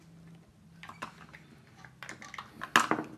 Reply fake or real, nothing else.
real